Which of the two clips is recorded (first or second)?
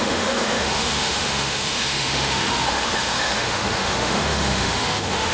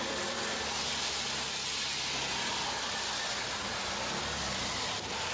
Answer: second